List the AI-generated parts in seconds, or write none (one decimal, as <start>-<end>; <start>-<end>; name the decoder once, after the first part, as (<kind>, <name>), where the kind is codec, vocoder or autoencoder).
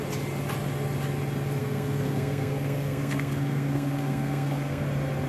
1.6-4.8 (codec, SNAC)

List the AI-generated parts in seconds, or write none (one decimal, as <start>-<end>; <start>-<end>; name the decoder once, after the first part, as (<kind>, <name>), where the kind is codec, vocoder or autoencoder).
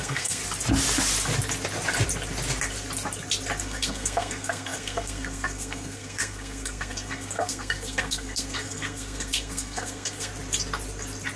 0.0-0.4 (codec, SNAC); 3.6-10.3